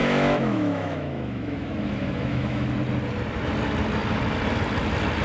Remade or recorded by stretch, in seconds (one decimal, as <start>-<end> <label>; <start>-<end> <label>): 0.0-2.7 remade; 2.7-5.2 recorded